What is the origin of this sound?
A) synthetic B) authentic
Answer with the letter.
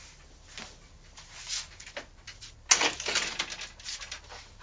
B